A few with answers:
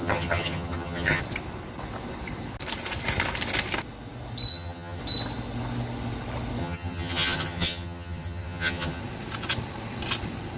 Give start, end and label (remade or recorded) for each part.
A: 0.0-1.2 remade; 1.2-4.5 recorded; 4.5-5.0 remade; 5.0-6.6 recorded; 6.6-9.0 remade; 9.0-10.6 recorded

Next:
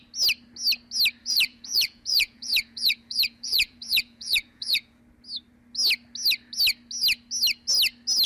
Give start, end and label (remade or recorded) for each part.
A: 0.0-1.2 recorded; 1.2-5.0 remade; 5.0-8.3 recorded

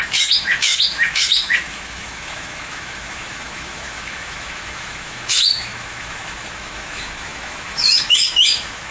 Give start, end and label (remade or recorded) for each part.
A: 0.0-8.9 remade

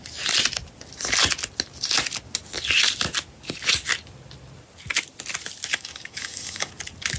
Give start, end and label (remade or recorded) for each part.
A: 0.0-5.7 recorded; 5.7-6.7 remade; 6.7-7.2 recorded

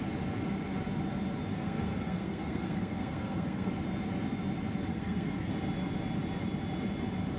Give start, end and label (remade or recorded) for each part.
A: 0.0-1.5 recorded; 1.5-3.7 remade; 3.7-4.9 recorded; 4.9-5.5 remade; 5.5-7.4 recorded